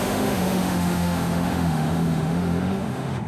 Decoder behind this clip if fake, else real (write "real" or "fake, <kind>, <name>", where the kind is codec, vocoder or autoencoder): fake, autoencoder, DAC-VAE